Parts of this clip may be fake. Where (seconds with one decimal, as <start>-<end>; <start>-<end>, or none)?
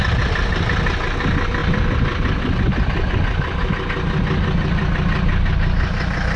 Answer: 1.6-3.7